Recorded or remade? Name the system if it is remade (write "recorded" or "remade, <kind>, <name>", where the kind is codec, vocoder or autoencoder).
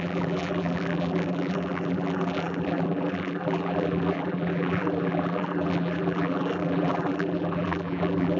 remade, vocoder, BigVGAN v2